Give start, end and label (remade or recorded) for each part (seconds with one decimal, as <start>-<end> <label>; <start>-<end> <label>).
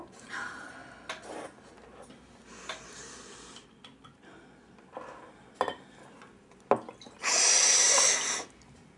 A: 0.0-9.0 recorded